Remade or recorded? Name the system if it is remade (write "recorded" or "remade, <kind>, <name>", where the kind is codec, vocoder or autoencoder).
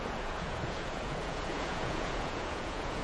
remade, vocoder, Vocos